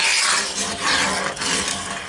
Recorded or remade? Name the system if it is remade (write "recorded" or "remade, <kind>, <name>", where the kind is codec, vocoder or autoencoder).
recorded